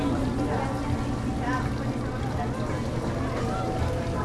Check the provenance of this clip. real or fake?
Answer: real